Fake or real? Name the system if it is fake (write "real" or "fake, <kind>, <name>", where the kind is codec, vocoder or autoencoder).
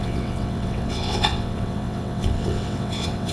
fake, vocoder, WaveNeXt